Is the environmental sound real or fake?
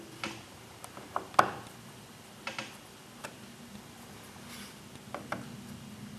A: real